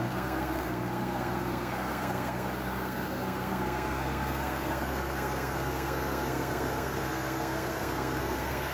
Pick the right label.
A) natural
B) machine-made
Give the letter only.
B